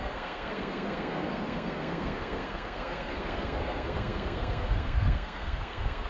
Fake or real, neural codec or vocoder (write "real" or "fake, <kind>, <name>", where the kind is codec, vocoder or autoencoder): fake, codec, SNAC